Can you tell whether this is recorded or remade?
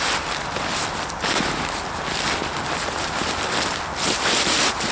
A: recorded